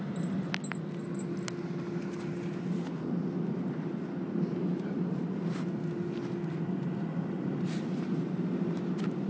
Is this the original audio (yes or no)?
yes